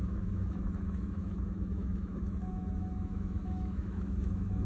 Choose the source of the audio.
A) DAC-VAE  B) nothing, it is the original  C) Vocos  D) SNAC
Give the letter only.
A